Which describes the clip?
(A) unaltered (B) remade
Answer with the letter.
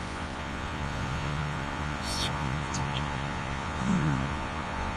B